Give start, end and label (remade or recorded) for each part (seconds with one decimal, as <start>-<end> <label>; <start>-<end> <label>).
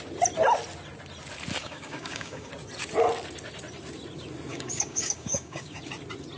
0.0-1.6 recorded; 1.6-2.5 remade; 2.5-4.5 recorded; 4.5-5.8 remade; 5.8-6.4 recorded